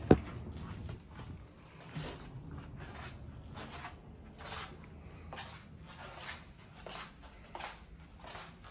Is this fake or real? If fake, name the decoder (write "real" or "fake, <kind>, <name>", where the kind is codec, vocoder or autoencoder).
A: real